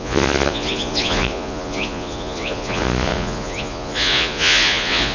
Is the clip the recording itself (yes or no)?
no